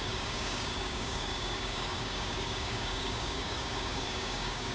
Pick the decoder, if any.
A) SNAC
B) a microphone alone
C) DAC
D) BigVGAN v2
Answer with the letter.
C